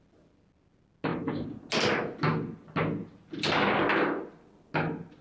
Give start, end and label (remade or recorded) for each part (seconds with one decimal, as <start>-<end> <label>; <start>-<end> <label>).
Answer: 0.0-5.2 recorded